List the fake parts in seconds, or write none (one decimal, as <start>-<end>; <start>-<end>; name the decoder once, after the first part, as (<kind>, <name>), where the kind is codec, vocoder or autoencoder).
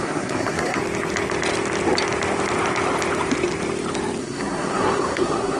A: 0.0-0.8 (codec, SNAC); 4.2-5.6